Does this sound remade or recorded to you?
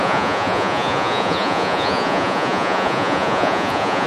remade